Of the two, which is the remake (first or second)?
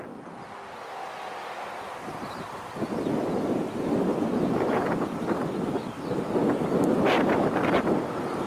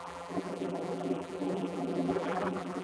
second